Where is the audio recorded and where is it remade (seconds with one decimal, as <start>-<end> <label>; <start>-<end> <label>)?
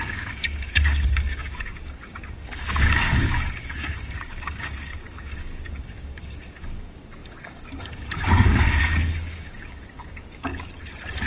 0.0-10.5 remade; 10.5-11.3 recorded